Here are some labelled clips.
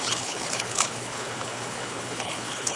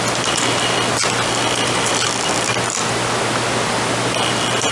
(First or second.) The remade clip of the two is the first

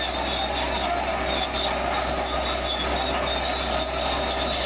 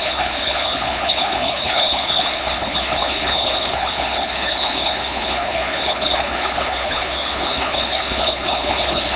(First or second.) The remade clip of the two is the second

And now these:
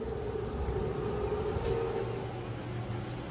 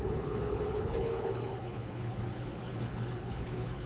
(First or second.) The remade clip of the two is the second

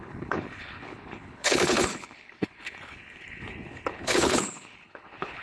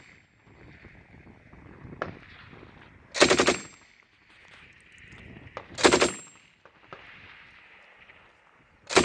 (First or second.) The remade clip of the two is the first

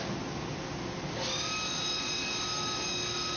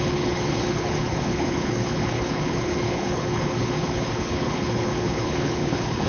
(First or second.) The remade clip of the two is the second